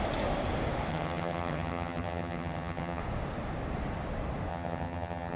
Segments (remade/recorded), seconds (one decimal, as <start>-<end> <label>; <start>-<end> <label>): 0.0-0.9 recorded; 0.9-3.0 remade; 3.0-4.5 recorded; 4.5-5.4 remade